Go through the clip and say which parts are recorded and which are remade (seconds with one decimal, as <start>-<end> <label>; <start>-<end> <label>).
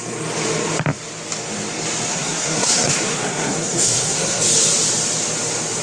0.0-2.1 recorded; 2.1-4.4 remade; 4.4-5.8 recorded